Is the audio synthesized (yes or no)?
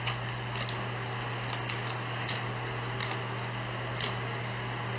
no